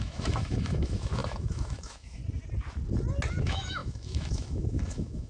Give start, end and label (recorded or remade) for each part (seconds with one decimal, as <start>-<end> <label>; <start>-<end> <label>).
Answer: 0.0-2.2 remade; 2.2-3.4 recorded; 3.4-5.3 remade